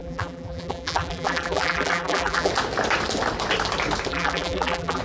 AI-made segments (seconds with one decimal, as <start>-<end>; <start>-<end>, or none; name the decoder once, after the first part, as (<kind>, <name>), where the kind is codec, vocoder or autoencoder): 0.0-2.5 (vocoder, BigVGAN v2); 4.1-5.0